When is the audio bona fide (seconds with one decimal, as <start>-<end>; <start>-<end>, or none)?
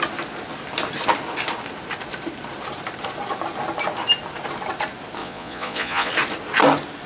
0.0-5.2; 6.1-7.1